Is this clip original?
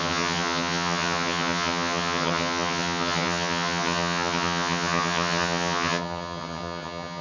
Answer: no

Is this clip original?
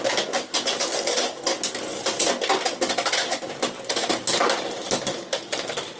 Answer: yes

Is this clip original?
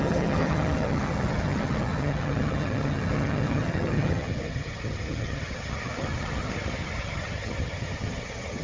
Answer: no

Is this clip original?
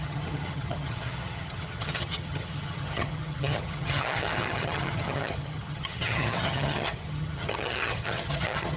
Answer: no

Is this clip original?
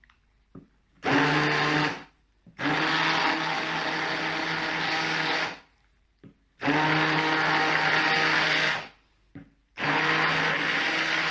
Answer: yes